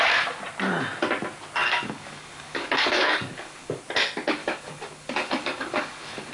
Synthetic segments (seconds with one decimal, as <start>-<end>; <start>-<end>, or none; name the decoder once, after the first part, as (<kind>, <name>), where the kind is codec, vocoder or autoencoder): 1.6-3.8 (codec, DAC); 4.4-6.3